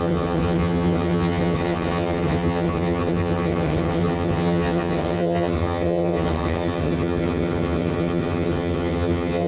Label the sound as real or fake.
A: fake